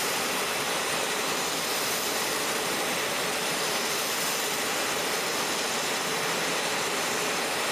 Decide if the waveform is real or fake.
fake